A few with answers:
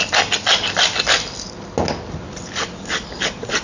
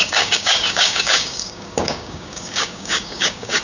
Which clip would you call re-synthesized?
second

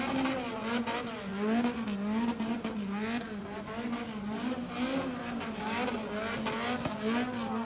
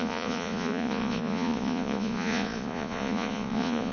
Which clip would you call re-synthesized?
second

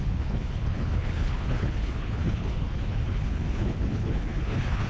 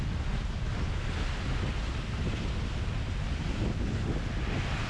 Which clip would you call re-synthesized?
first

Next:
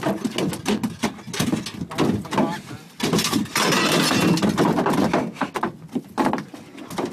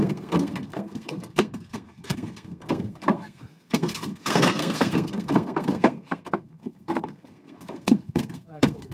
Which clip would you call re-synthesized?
second